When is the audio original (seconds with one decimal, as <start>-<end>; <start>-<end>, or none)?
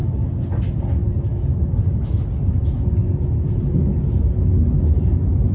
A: 0.0-5.5